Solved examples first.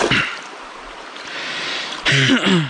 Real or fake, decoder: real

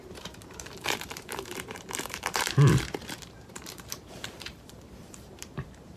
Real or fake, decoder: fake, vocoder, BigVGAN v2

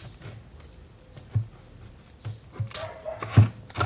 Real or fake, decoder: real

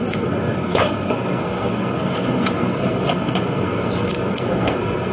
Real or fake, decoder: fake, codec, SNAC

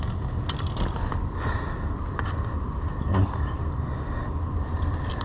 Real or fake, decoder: real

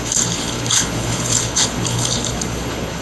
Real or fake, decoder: fake, codec, HILCodec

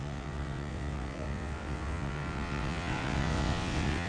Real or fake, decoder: fake, vocoder, WaveNeXt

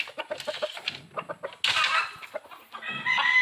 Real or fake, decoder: real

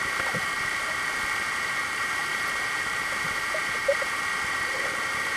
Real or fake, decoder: real